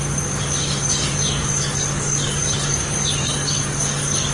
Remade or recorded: remade